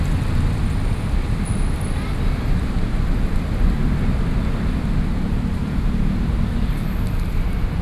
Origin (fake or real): real